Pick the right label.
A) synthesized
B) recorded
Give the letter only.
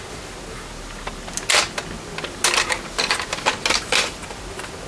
B